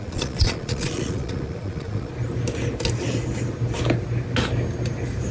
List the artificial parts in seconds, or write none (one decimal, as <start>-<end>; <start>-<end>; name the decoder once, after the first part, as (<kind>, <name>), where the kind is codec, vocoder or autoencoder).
0.0-2.1 (vocoder, Vocos)